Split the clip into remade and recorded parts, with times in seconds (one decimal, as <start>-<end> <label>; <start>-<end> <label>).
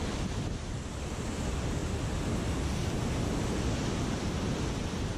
0.0-5.2 recorded